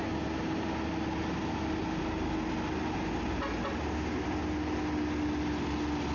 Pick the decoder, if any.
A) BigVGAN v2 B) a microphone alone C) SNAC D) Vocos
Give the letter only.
B